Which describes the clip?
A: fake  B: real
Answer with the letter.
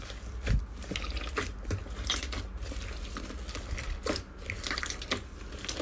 B